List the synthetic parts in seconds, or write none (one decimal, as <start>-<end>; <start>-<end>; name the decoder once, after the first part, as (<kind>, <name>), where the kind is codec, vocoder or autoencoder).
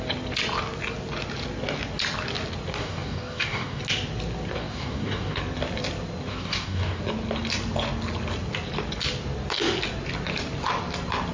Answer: 2.8-3.8 (codec, DAC); 4.6-5.4; 6.3-7.0